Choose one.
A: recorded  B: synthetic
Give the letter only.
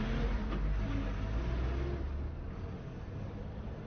A